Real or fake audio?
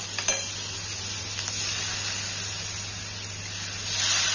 real